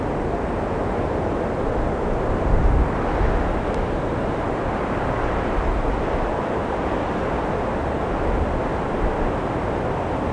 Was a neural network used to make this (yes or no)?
no